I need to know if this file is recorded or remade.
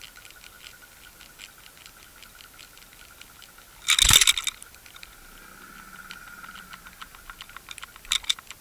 recorded